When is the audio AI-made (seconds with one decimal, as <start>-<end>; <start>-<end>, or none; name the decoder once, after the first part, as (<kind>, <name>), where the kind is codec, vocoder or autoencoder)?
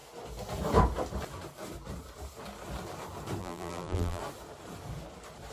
3.4-4.2 (vocoder, BigVGAN v2)